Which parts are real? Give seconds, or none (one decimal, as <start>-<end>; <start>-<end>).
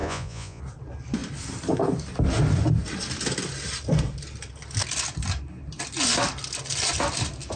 0.6-7.6